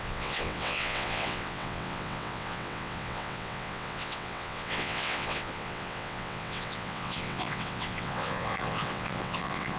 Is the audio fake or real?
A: fake